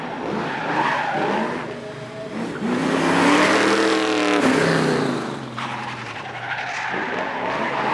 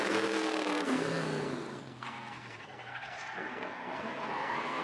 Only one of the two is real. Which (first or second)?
first